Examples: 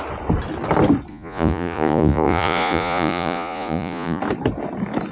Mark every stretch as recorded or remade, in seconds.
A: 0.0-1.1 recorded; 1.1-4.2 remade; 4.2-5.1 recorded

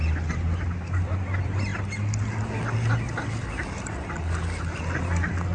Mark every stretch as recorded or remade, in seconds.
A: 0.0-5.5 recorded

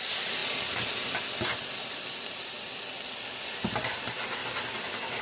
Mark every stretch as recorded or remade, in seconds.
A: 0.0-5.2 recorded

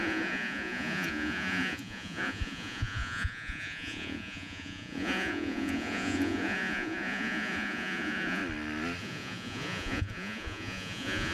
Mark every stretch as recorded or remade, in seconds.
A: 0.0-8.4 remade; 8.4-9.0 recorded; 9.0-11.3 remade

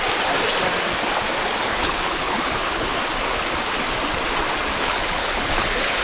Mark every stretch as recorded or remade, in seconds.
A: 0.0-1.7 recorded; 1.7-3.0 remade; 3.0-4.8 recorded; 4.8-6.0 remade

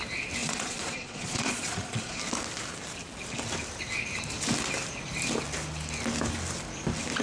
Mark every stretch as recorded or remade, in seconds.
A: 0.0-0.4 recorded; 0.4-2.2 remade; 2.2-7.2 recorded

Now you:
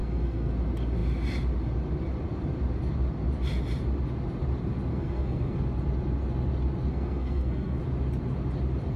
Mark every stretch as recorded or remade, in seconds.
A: 0.0-0.5 remade; 0.5-4.9 recorded; 4.9-5.6 remade; 5.6-6.9 recorded; 6.9-7.8 remade; 7.8-9.0 recorded

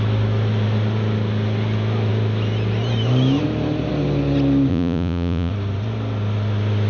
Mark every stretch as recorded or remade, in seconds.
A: 0.0-4.7 recorded; 4.7-5.5 remade; 5.5-6.9 recorded